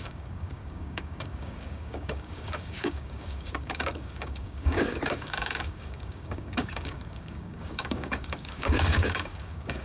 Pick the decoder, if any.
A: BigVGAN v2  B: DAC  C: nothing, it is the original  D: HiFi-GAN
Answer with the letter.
B